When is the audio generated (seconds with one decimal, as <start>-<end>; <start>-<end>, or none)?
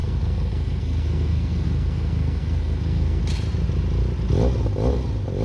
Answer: 0.0-3.2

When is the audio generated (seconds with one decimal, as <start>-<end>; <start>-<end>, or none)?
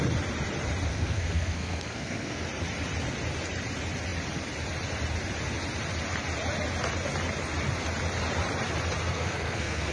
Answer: 0.9-2.4; 9.1-9.9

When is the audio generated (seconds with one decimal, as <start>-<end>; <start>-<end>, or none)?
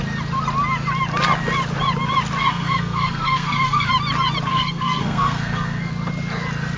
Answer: 2.4-3.9; 4.5-5.9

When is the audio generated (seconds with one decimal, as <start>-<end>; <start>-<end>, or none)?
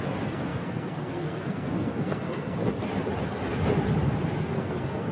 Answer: 0.0-2.6; 4.4-5.1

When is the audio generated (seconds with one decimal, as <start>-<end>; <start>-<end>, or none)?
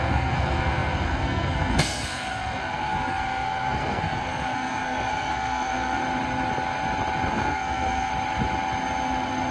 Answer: 0.0-6.0; 7.3-8.1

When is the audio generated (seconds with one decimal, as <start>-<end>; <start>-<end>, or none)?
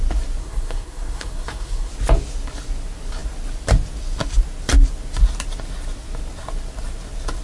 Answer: 0.4-1.9